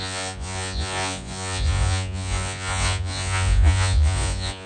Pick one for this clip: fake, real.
fake